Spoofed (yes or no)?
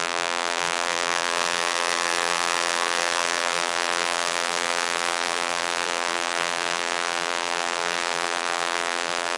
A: yes